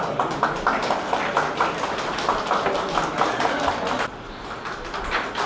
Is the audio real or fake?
real